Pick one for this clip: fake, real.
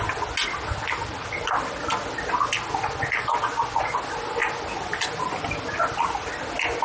real